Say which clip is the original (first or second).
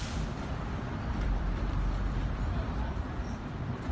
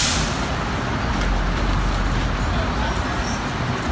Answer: second